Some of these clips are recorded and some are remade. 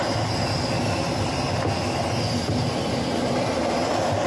recorded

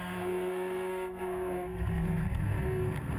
remade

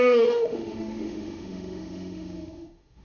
remade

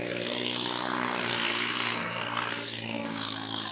remade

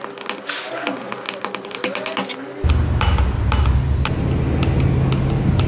recorded